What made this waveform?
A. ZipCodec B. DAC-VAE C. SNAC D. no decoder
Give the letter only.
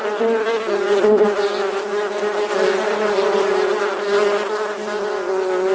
D